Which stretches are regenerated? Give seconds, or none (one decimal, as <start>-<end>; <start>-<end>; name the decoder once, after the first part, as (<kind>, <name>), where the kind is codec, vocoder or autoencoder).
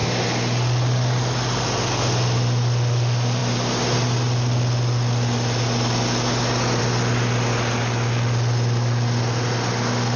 none